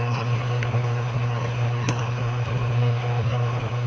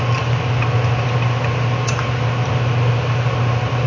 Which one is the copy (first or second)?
first